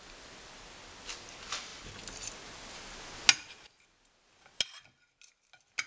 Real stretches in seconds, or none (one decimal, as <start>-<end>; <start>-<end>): 0.0-5.9